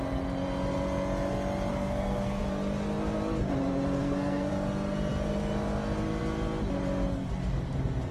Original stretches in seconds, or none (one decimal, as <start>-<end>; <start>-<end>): 0.0-1.7; 2.4-4.0; 4.5-8.1